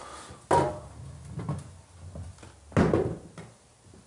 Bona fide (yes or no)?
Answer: yes